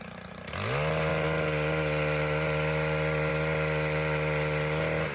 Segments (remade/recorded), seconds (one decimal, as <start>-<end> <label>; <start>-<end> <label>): 0.0-5.1 recorded